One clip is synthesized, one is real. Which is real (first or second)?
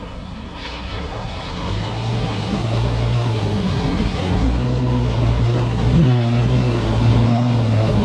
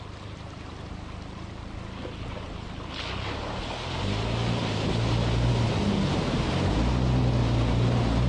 second